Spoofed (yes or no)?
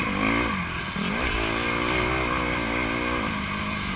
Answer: no